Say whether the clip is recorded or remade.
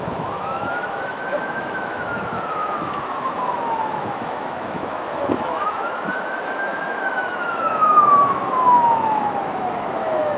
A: remade